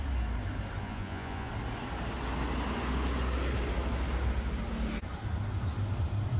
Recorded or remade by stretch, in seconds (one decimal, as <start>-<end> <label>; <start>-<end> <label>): 0.0-0.8 recorded; 0.8-1.5 remade; 1.5-6.4 recorded